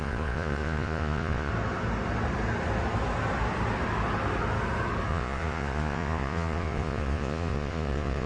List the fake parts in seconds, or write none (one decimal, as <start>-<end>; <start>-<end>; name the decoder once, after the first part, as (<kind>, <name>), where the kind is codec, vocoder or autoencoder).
0.0-1.5 (vocoder, Vocos); 5.1-8.3